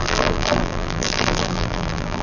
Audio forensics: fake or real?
fake